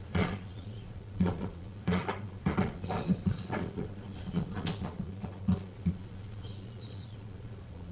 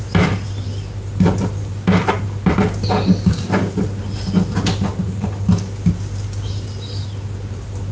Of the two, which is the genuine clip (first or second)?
second